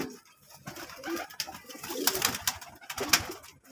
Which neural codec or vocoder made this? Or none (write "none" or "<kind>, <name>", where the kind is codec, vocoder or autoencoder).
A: none